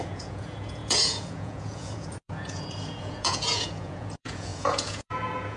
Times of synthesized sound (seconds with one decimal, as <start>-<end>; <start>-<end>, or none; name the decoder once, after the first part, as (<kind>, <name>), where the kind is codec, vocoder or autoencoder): 0.0-5.6 (vocoder, Vocos)